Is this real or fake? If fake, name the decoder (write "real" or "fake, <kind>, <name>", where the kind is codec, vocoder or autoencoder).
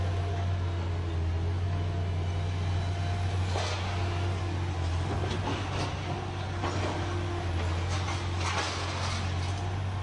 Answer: real